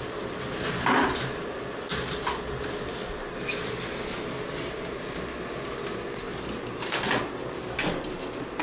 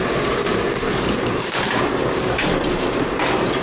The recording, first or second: first